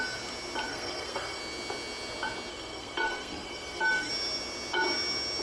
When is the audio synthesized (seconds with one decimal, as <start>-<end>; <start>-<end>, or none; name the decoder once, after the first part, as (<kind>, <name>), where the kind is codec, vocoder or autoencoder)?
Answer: 0.7-1.4 (codec, SNAC); 2.5-4.1